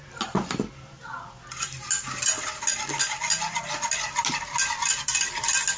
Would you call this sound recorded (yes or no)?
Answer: yes